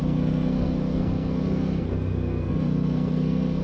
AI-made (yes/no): yes